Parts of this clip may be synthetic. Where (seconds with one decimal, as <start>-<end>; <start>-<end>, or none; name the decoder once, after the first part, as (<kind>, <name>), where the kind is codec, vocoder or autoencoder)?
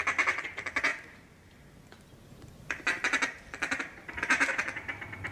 none